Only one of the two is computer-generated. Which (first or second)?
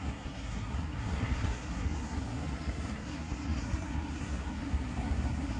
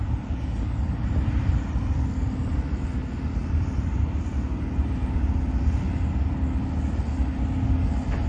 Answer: first